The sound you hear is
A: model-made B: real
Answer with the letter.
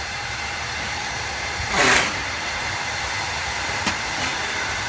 A